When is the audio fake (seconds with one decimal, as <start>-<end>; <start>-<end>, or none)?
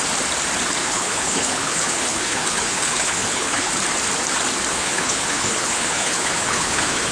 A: 0.8-3.7; 4.7-7.1